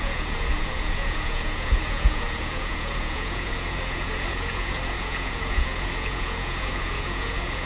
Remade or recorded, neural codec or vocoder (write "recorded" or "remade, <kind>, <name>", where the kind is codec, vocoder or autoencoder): remade, vocoder, Vocos